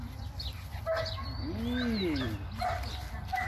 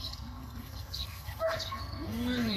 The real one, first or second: first